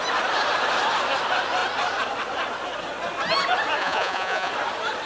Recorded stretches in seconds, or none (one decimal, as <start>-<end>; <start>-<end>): 0.0-3.8; 4.5-5.1